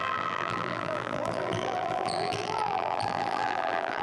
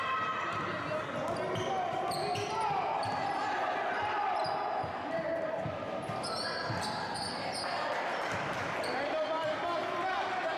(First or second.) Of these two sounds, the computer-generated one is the first